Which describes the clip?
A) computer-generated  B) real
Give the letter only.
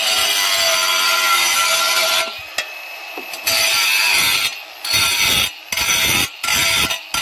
B